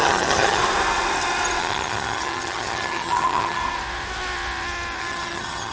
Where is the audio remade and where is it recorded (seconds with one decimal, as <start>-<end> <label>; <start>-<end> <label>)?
0.0-0.6 remade; 0.6-1.6 recorded; 1.6-3.6 remade; 3.6-5.0 recorded; 5.0-5.7 remade